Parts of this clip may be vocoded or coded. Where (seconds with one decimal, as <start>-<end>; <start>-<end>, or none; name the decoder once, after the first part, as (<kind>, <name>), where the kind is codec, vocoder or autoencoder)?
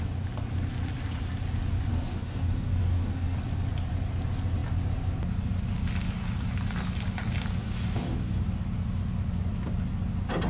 1.9-3.4 (codec, DAC); 7.6-8.4